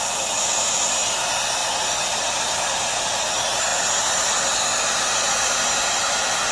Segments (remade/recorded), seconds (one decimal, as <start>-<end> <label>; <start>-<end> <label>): 0.0-6.5 recorded